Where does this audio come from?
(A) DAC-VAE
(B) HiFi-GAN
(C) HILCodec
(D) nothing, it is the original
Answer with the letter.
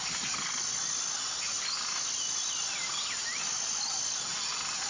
D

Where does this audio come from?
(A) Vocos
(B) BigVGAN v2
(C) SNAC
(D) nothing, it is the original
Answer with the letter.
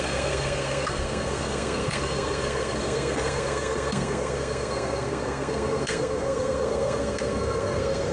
C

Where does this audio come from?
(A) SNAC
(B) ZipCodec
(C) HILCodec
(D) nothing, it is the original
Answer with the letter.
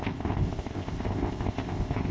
B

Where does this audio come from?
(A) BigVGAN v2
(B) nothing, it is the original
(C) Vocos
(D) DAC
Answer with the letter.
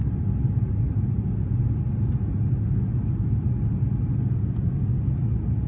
B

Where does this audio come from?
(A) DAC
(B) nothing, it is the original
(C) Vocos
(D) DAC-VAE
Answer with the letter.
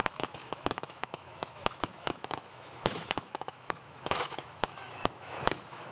D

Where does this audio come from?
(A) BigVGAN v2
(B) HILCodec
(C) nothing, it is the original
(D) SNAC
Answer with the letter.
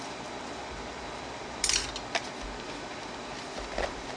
C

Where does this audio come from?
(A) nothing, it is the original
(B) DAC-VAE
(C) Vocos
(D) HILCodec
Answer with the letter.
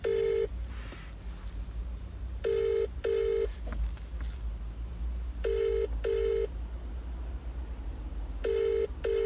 A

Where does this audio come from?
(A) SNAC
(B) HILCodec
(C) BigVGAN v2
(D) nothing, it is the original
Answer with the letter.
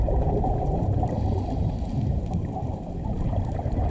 C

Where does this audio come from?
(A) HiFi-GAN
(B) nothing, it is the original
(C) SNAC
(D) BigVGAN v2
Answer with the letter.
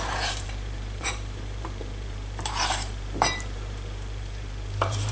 D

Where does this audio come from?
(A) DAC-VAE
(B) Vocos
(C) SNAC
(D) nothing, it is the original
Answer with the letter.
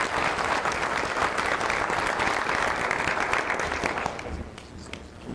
D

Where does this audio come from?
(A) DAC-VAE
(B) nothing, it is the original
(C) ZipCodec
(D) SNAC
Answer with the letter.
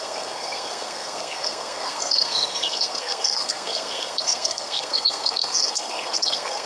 D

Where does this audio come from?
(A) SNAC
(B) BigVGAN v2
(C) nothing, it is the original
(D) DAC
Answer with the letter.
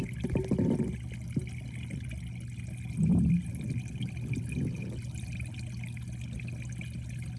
C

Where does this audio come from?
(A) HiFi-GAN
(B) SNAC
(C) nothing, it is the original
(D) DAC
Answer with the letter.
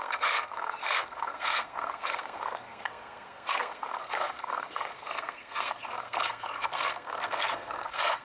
B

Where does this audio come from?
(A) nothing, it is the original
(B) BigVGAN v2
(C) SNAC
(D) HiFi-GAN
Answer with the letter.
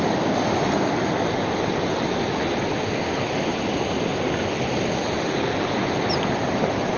A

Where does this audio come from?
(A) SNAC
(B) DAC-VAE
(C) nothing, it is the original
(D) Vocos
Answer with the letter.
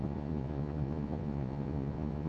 D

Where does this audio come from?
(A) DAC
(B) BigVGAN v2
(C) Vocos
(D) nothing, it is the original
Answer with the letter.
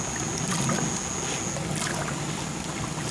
D